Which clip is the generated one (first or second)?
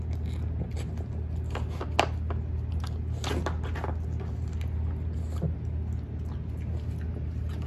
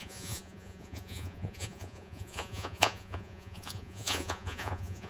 second